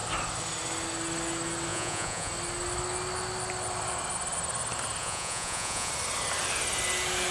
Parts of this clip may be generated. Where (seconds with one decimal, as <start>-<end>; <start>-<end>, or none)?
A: 1.7-2.3; 5.0-5.9